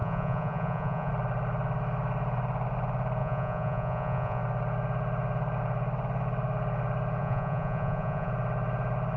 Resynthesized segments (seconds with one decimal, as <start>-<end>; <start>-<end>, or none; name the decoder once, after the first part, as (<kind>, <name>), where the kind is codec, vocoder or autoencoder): 0.0-1.1 (vocoder, Vocos); 3.2-4.4; 7.2-8.3